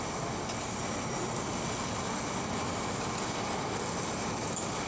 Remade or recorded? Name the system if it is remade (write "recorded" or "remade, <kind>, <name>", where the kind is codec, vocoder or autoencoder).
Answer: recorded